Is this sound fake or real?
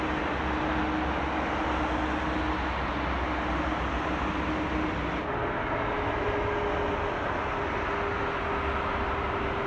real